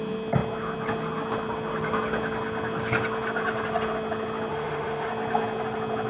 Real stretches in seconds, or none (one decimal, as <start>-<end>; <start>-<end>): 0.0-4.5; 5.1-6.1